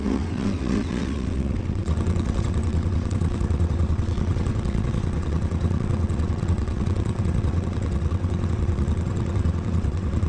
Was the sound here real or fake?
fake